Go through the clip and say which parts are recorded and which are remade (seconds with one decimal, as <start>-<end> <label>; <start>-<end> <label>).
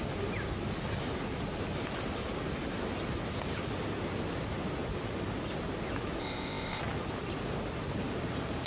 0.0-6.2 recorded; 6.2-6.8 remade; 6.8-8.7 recorded